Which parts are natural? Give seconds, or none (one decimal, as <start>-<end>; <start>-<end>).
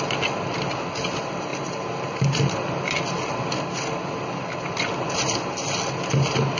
0.0-6.6